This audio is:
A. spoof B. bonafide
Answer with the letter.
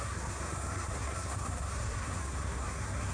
A